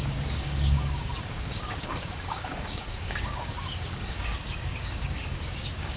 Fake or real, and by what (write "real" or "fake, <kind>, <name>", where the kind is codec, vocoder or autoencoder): fake, codec, DAC